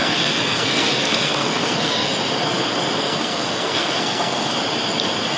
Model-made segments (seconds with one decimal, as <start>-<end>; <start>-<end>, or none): 0.0-2.1; 3.0-4.5